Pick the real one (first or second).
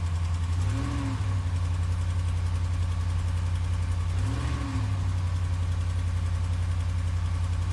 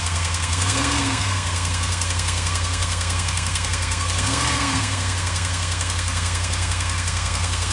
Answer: first